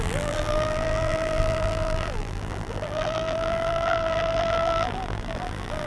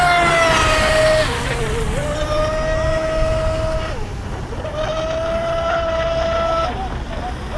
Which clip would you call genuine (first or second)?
second